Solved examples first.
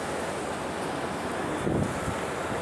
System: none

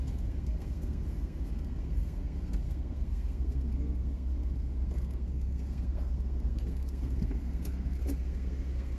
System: codec, SNAC